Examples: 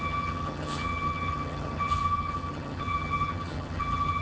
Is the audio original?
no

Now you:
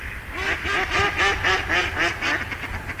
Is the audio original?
yes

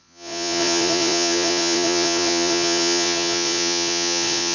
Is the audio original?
no